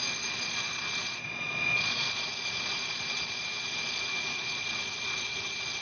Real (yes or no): no